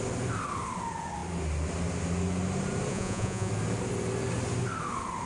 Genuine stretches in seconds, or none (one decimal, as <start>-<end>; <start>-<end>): 0.0-2.9; 3.5-5.3